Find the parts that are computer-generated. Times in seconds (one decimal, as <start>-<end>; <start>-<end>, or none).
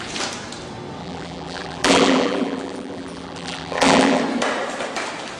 1.0-4.2